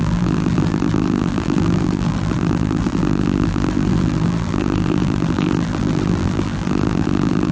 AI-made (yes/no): yes